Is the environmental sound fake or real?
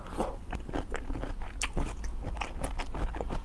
real